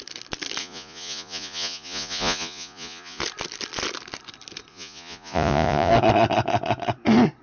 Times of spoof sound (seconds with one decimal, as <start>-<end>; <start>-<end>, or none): 0.6-3.2; 4.7-5.9